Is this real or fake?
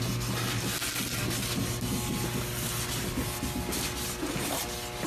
real